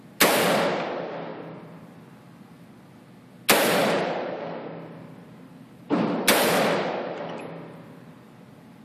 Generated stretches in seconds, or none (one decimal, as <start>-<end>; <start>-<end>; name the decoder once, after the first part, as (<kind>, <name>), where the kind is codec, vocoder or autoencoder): 1.3-2.0 (vocoder, BigVGAN v2); 3.8-4.5